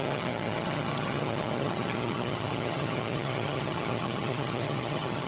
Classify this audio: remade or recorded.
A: remade